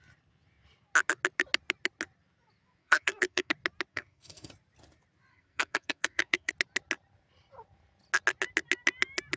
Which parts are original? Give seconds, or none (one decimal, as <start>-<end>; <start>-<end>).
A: 0.0-2.8; 3.5-3.9; 4.5-5.3; 6.5-9.4